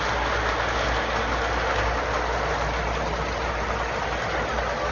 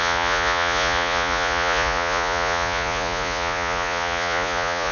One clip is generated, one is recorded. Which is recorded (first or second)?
first